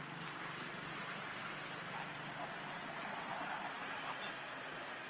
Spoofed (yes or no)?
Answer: no